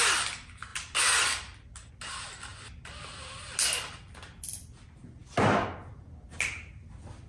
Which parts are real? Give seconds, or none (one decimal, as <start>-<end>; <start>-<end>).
0.0-7.3